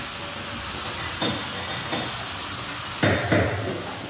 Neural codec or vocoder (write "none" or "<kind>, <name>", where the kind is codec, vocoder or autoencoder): none